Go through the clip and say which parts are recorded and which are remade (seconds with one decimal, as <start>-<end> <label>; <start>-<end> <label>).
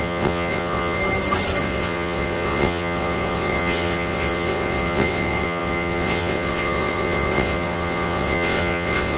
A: 0.0-1.0 remade; 1.0-1.6 recorded; 1.6-9.2 remade